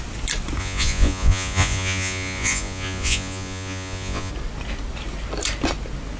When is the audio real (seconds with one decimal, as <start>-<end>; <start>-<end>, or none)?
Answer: 0.0-0.6; 4.3-6.2